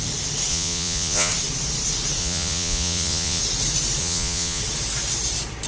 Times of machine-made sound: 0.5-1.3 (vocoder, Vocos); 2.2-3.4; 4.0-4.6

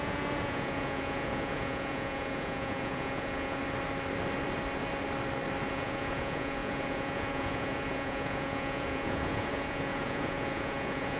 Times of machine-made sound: 0.0-3.6 (vocoder, Vocos); 5.7-11.2